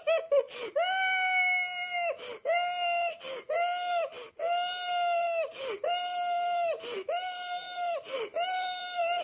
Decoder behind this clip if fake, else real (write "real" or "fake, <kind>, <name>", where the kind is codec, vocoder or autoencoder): real